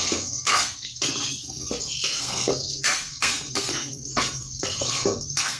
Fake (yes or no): yes